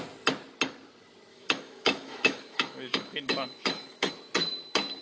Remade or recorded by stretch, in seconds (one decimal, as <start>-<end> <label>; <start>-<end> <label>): 0.0-1.3 recorded; 1.3-4.1 remade; 4.1-5.0 recorded